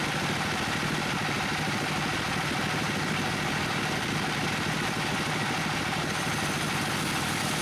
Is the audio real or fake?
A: fake